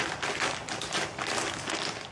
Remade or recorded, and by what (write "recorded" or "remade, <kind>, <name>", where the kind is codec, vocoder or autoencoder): recorded